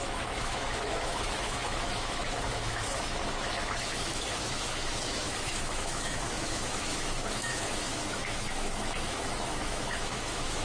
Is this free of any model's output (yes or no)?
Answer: no